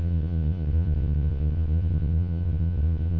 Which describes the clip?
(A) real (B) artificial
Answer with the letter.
B